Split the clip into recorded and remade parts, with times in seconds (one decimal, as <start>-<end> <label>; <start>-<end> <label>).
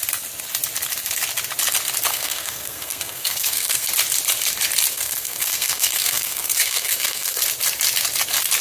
0.0-2.1 recorded; 2.1-3.9 remade; 3.9-4.9 recorded; 4.9-7.4 remade; 7.4-8.6 recorded